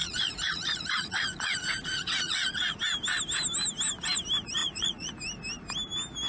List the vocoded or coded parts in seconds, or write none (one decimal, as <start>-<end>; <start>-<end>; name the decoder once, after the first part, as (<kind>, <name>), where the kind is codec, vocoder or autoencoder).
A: 0.0-2.8 (vocoder, Vocos); 4.6-5.1